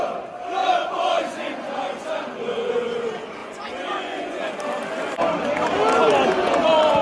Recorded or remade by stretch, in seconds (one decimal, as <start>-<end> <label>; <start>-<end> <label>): 0.0-0.6 recorded; 0.6-2.7 remade; 2.7-3.4 recorded; 3.4-4.5 remade; 4.5-6.4 recorded; 6.4-7.0 remade